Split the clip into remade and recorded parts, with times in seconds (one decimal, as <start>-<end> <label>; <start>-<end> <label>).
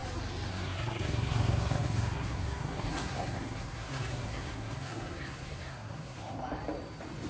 0.0-0.5 recorded; 0.5-6.4 remade; 6.4-7.3 recorded